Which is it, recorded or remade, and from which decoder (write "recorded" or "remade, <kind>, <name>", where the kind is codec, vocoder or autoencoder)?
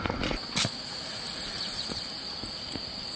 recorded